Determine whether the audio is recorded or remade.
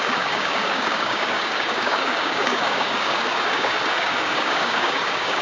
remade